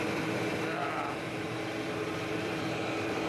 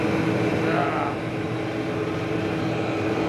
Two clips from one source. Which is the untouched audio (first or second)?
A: second